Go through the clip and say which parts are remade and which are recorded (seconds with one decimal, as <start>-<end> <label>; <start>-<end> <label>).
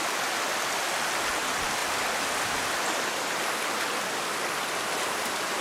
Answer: 0.0-5.6 recorded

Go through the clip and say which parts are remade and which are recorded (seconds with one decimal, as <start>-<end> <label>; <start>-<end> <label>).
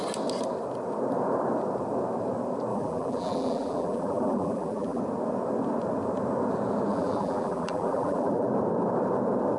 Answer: 0.0-2.7 recorded; 2.7-5.0 remade; 5.0-6.9 recorded; 6.9-8.5 remade; 8.5-9.6 recorded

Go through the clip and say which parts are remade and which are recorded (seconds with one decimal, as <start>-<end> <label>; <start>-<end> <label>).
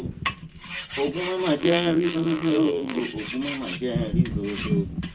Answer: 0.0-1.6 recorded; 1.6-3.0 remade; 3.0-5.1 recorded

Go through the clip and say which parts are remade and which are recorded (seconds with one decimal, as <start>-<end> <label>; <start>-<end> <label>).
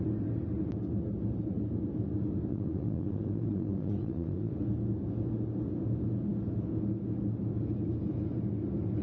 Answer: 0.0-2.5 recorded; 2.5-4.5 remade; 4.5-9.0 recorded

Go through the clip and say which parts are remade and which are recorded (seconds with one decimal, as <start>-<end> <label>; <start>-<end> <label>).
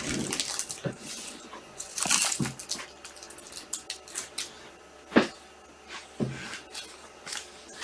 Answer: 0.0-0.8 recorded; 0.8-2.0 remade; 2.0-7.8 recorded